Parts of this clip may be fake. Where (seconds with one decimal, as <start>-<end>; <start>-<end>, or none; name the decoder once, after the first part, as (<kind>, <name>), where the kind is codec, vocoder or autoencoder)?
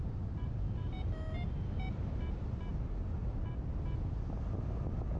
none